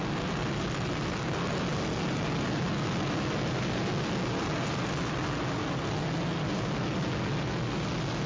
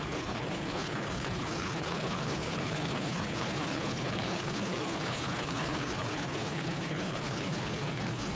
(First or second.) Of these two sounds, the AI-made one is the second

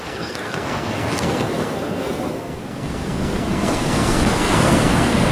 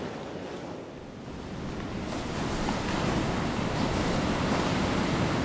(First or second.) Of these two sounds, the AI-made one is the first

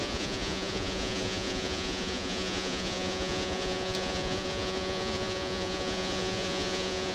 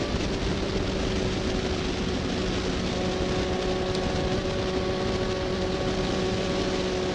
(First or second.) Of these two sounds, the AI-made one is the first